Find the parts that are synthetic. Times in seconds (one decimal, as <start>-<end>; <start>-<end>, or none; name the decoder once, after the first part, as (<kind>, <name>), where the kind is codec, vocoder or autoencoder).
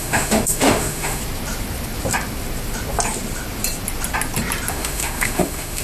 0.0-1.2 (autoencoder, DAC-VAE); 4.7-5.8